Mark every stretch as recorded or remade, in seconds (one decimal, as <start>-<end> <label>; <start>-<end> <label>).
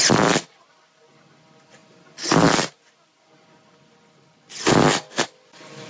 0.0-5.9 recorded